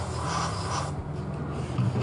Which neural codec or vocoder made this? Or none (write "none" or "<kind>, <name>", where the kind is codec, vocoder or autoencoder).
none